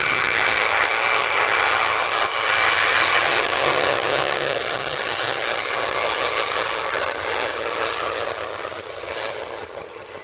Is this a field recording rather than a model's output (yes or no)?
no